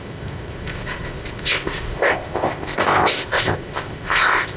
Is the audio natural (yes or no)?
no